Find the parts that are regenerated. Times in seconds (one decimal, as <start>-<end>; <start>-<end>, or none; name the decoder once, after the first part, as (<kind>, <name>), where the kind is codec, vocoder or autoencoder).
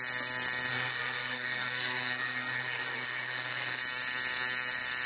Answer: 0.7-3.8 (codec, SNAC)